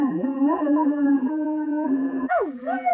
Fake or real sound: fake